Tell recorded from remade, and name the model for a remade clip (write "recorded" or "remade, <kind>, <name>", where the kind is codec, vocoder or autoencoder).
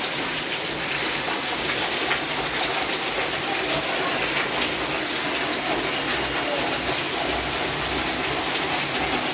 recorded